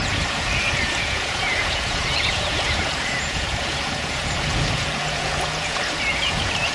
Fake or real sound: fake